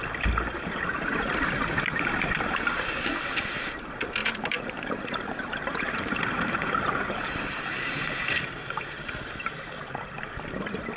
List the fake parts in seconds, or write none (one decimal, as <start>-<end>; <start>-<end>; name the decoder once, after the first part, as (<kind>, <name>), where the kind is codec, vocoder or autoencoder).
0.5-1.3 (vocoder, BigVGAN v2); 4.2-9.1